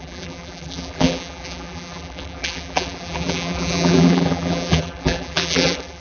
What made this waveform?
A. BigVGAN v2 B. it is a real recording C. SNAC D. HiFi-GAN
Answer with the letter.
A